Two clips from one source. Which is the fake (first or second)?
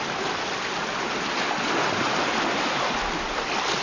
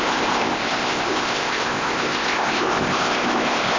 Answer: second